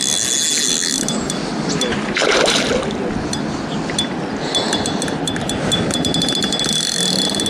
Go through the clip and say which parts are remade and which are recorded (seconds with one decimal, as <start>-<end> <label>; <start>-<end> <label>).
0.0-7.5 recorded